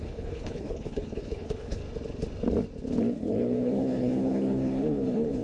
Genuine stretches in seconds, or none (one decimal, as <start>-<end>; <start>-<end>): 1.8-3.0